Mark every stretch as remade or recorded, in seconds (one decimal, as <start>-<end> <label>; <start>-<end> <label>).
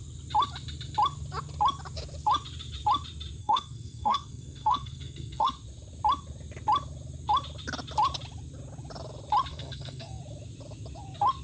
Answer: 0.0-3.4 recorded; 3.4-5.5 remade; 5.5-9.5 recorded; 9.5-10.2 remade; 10.2-11.4 recorded